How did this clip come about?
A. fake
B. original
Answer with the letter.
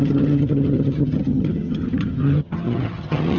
A